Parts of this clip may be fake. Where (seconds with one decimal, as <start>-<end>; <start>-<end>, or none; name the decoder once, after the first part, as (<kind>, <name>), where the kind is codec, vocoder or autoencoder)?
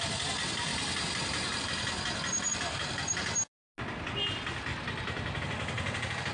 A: 0.7-1.6 (vocoder, BigVGAN v2); 4.7-5.4